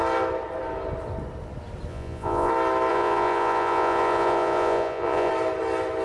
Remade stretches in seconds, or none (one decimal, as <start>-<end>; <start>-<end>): 1.9-2.5; 2.9-5.3